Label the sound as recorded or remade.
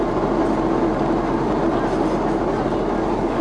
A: recorded